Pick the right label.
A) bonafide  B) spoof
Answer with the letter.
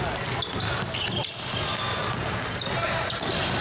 A